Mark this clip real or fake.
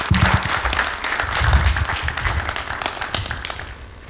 real